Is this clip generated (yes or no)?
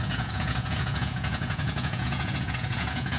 yes